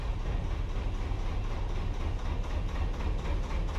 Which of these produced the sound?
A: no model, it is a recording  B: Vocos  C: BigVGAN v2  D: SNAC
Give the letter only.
A